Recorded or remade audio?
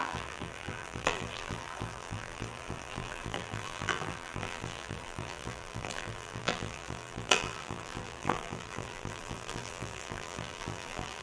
remade